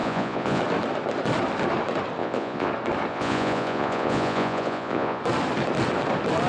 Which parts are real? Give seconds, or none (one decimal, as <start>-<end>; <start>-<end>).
0.6-2.2; 2.7-3.1; 5.2-6.5